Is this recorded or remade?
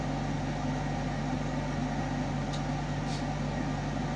recorded